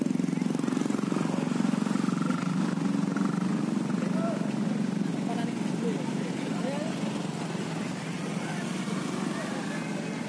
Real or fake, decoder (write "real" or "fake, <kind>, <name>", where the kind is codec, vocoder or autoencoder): real